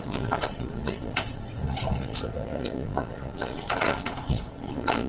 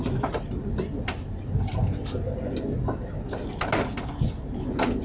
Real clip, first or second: second